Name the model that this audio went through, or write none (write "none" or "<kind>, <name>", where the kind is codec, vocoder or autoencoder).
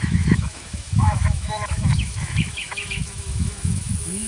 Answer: autoencoder, DAC-VAE